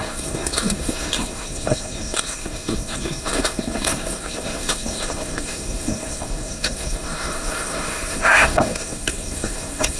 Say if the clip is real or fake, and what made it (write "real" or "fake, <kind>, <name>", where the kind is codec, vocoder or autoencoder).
fake, codec, SNAC